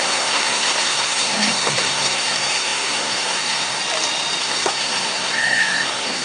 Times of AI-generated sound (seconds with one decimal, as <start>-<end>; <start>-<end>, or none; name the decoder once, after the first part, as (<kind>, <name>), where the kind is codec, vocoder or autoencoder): 0.0-3.8 (codec, SNAC); 4.4-6.2